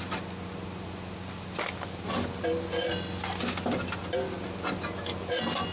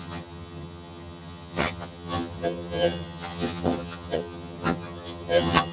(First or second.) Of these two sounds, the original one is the first